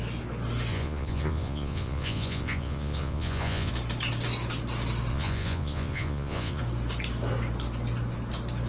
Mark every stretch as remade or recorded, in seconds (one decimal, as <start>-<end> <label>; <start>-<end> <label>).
0.0-0.7 recorded; 0.7-3.7 remade; 3.7-5.1 recorded; 5.1-6.6 remade; 6.6-8.7 recorded